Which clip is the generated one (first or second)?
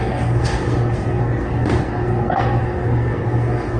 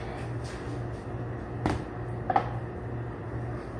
first